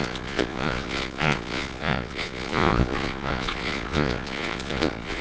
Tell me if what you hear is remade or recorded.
remade